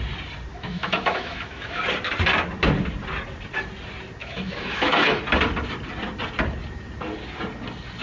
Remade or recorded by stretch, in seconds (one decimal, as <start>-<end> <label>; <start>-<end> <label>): 0.0-0.5 recorded; 0.5-1.8 remade; 1.8-4.2 recorded; 4.2-5.2 remade; 5.2-8.0 recorded